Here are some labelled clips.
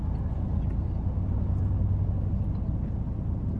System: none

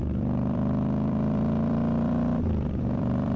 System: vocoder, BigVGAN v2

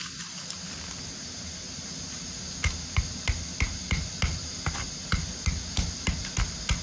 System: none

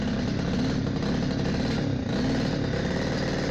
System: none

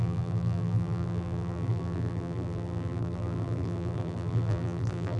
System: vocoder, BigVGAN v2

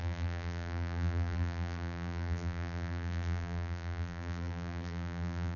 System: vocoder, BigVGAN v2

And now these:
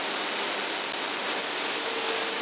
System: none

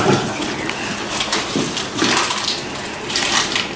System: none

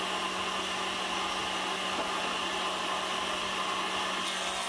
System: none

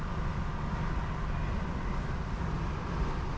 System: none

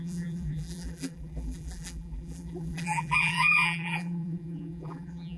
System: vocoder, BigVGAN v2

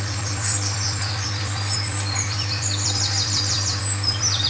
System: vocoder, BigVGAN v2